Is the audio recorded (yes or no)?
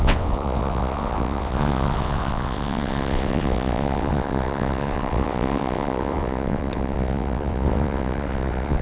no